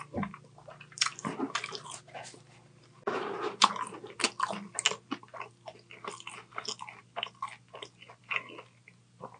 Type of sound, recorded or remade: recorded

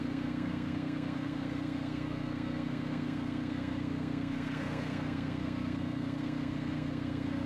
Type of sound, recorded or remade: remade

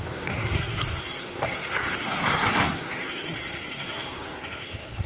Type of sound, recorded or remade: remade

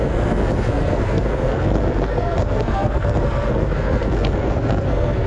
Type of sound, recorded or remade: remade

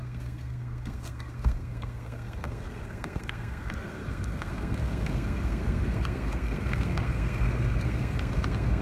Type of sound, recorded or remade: remade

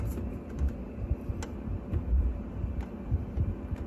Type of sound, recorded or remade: recorded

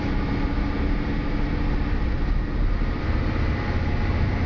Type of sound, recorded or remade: recorded